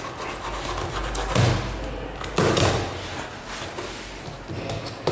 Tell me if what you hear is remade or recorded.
recorded